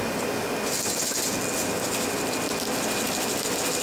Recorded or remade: recorded